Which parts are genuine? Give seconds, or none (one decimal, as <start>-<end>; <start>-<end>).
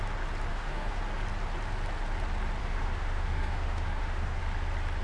0.0-0.5; 1.0-2.6; 4.4-5.0